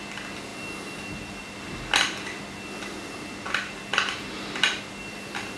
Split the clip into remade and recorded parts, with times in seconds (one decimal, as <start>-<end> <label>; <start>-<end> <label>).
0.0-5.6 recorded